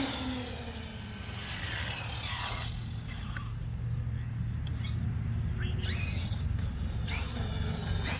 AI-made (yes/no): no